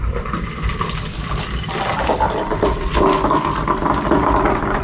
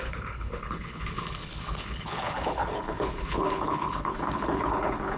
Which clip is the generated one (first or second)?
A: second